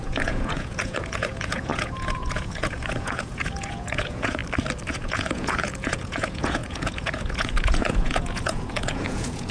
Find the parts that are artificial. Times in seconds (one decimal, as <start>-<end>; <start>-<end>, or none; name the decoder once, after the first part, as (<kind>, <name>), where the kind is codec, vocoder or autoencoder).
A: 0.0-4.4 (vocoder, Vocos); 4.9-9.5